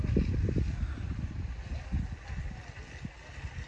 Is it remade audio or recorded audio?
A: recorded